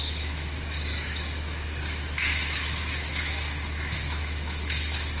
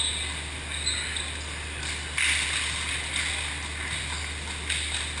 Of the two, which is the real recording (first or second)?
second